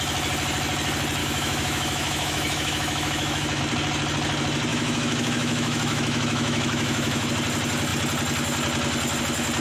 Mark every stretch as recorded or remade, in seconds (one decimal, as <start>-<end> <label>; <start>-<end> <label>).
0.0-1.2 recorded; 1.2-3.6 remade; 3.6-4.7 recorded; 4.7-7.3 remade; 7.3-9.6 recorded